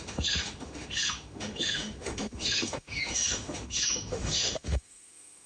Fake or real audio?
fake